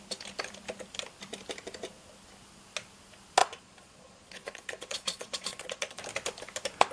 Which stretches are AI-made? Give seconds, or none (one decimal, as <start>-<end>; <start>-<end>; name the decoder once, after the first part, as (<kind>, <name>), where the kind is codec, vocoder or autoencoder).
3.4-6.0 (vocoder, Vocos)